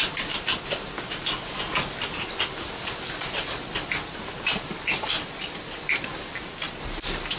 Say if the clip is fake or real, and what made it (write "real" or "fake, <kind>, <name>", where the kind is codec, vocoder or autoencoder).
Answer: real